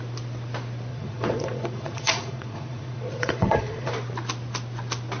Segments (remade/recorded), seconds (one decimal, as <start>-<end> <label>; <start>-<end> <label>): 0.0-0.9 recorded; 0.9-3.9 remade; 3.9-5.2 recorded